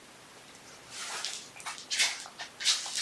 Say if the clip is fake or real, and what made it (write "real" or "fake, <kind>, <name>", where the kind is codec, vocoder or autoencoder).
real